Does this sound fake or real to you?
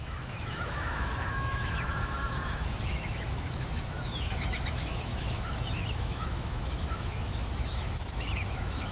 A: fake